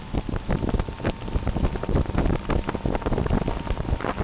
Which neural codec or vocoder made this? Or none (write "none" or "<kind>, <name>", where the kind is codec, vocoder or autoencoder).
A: none